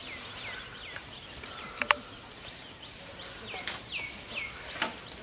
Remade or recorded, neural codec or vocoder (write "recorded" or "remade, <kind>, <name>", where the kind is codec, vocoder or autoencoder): recorded